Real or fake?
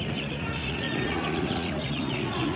fake